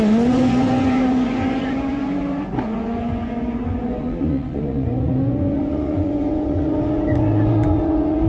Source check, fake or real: fake